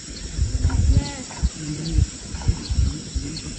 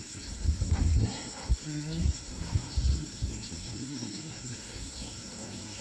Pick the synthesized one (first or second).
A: second